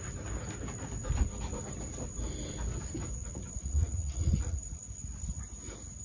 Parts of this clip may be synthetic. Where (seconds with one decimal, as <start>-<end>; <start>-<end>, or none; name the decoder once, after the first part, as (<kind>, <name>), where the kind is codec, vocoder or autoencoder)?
3.2-4.8 (vocoder, Vocos)